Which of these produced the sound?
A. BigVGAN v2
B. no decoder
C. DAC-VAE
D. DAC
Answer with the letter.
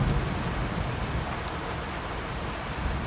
B